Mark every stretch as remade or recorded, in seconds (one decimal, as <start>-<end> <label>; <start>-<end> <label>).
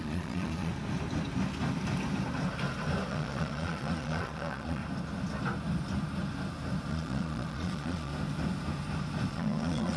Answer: 0.0-0.7 remade; 0.7-3.1 recorded; 3.1-4.8 remade; 4.8-6.9 recorded; 6.9-8.1 remade; 8.1-9.3 recorded; 9.3-10.0 remade